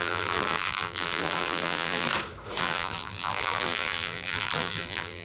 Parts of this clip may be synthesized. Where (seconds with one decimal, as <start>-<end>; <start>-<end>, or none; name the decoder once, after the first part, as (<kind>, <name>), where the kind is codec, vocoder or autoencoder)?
0.0-2.1 (vocoder, BigVGAN v2); 2.6-5.2